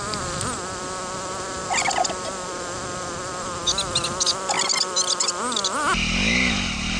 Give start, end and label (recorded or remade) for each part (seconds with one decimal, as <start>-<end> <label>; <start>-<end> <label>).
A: 0.0-7.0 recorded